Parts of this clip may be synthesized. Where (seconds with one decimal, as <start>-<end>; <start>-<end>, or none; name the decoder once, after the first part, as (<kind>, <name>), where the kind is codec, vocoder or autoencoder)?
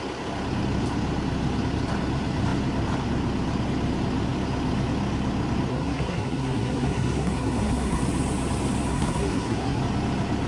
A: 5.7-8.0 (codec, SNAC); 8.9-9.8